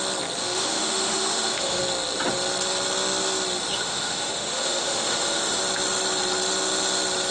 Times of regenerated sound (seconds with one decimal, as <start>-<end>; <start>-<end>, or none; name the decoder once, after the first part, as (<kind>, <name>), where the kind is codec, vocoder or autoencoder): 0.4-1.8 (autoencoder, DAC-VAE); 3.7-5.6